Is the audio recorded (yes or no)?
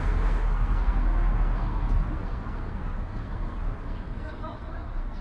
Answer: no